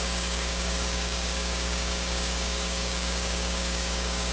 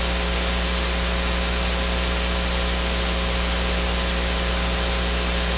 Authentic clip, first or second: second